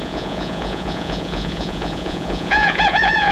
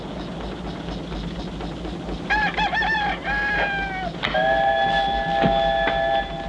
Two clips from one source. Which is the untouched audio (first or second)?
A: second